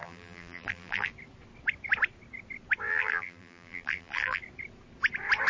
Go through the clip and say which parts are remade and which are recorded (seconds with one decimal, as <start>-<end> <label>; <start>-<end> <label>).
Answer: 0.0-1.1 remade; 1.1-2.9 recorded; 2.9-4.4 remade; 4.4-5.5 recorded